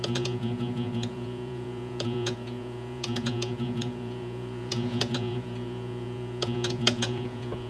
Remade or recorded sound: remade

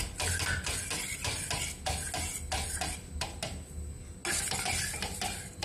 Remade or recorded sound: recorded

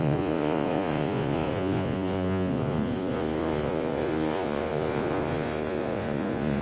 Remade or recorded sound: remade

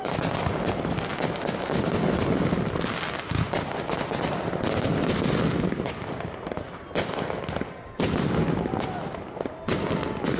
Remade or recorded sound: recorded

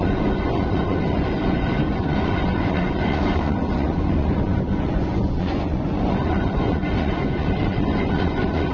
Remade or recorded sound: remade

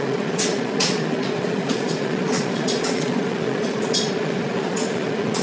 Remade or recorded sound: remade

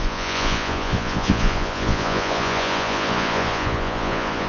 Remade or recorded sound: remade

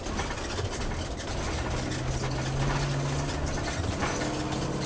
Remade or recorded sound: recorded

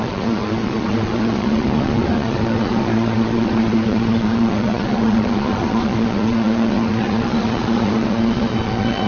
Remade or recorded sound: remade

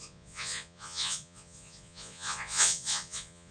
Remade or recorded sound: remade